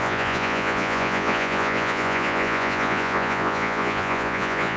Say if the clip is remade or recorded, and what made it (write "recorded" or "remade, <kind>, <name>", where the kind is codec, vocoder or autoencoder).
remade, vocoder, Vocos